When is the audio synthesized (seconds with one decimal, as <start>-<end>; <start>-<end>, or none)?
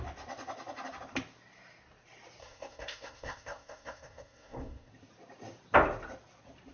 2.4-4.9